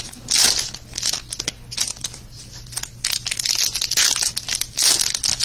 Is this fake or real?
real